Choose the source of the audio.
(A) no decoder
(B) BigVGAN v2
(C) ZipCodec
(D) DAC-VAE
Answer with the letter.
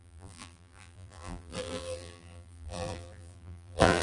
B